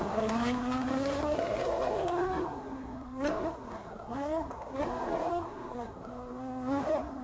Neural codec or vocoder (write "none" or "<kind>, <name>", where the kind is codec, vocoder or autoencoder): codec, SNAC